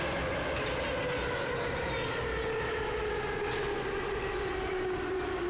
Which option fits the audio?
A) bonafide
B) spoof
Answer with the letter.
A